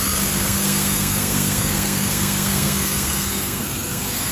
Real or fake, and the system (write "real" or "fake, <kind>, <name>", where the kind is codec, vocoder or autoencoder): fake, codec, SNAC